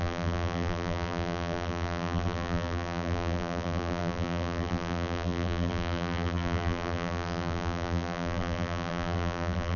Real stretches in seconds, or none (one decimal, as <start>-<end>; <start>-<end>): none